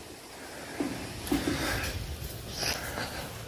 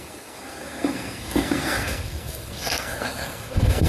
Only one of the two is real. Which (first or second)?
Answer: first